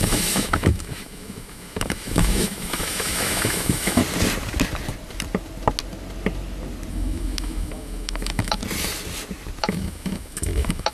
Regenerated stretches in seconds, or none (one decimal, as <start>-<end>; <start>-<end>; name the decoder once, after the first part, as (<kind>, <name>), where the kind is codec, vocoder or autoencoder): 0.0-4.0 (autoencoder, DAC-VAE); 6.9-8.6; 9.6-10.9